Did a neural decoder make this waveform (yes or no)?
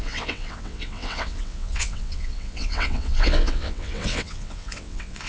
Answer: yes